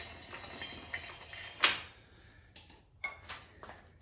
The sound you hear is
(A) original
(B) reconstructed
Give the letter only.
A